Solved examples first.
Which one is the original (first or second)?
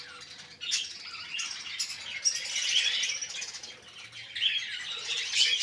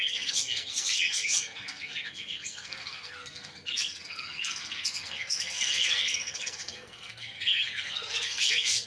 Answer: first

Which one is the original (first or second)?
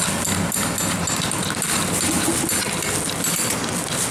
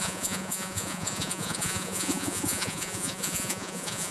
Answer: first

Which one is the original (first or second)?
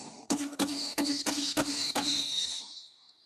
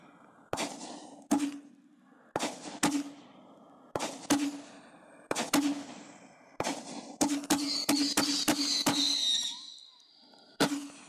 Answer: second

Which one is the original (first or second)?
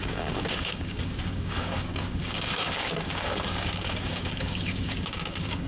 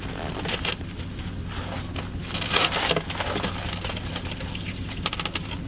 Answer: second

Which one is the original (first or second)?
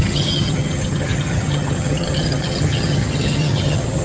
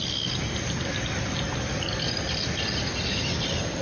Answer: second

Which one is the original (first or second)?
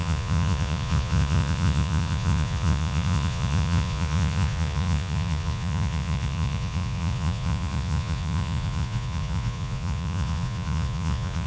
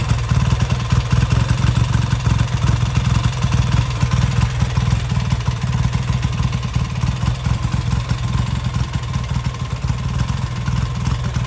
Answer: second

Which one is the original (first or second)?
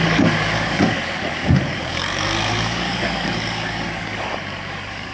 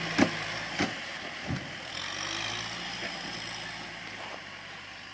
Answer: second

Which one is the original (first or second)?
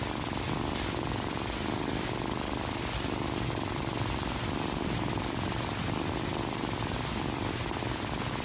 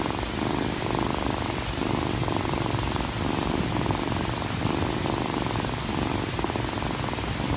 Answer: first